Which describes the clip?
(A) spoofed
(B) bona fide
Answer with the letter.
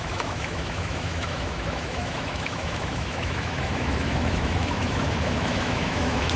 A